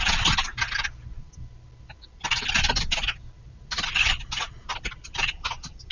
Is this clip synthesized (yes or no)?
no